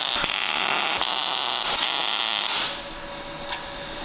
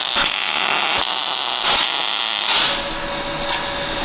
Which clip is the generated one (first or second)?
first